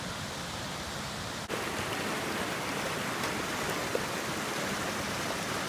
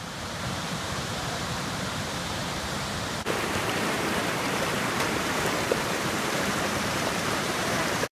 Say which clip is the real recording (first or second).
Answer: first